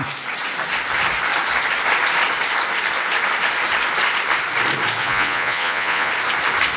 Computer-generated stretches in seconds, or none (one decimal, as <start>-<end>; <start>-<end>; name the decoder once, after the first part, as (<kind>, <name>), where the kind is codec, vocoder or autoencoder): 5.0-6.1 (vocoder, Vocos)

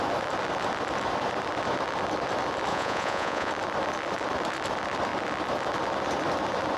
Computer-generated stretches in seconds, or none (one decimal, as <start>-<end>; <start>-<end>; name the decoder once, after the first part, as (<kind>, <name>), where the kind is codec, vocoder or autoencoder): 2.7-3.5 (vocoder, Vocos)

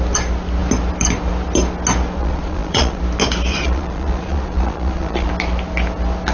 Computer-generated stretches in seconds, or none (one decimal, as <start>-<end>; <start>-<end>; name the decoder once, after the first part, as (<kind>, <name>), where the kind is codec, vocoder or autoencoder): 2.2-3.0 (vocoder, Vocos); 3.5-5.3

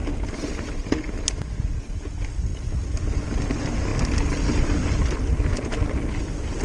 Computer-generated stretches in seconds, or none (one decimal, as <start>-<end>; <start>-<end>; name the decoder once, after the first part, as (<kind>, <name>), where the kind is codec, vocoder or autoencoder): none

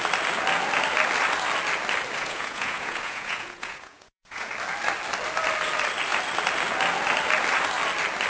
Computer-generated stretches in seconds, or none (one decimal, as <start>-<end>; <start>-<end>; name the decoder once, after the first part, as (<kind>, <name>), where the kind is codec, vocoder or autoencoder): 2.2-4.5 (vocoder, Vocos)

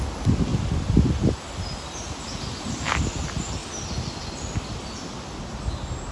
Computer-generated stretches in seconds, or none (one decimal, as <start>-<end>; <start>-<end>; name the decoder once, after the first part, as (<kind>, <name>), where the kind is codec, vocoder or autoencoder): none

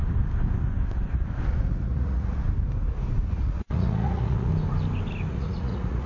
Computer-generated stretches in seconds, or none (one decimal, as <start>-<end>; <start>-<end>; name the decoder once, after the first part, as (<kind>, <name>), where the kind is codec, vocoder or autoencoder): 1.6-2.4 (vocoder, Vocos); 3.3-4.5; 5.3-6.1

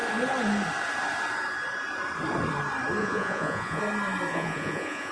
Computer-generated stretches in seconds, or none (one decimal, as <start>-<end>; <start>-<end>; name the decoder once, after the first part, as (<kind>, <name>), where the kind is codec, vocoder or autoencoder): 3.0-3.8 (vocoder, Vocos); 4.3-5.1